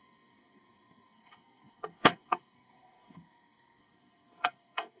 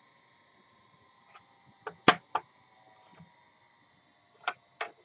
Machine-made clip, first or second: first